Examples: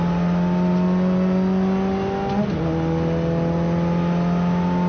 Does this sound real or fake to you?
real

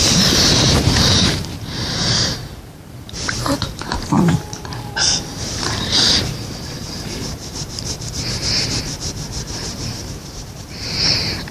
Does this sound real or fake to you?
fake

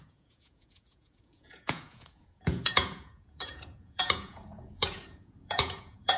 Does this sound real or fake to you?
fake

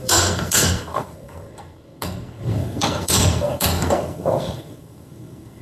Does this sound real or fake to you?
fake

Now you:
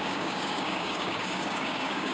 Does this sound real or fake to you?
fake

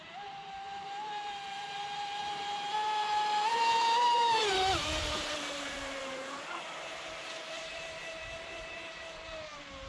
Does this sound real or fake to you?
fake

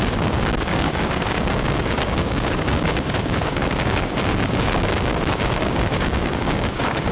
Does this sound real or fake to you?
fake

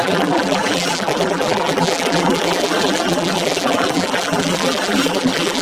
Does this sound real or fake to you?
fake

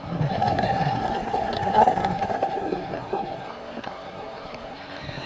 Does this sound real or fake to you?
fake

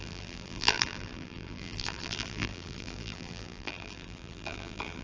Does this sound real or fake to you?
fake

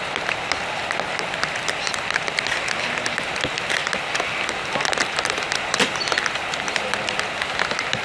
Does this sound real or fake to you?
real